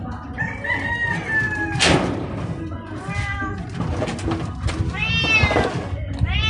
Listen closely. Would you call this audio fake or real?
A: real